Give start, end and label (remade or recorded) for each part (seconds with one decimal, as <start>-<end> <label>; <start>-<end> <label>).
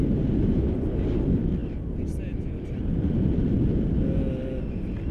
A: 0.0-5.1 recorded